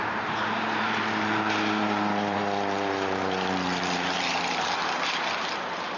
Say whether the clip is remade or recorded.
remade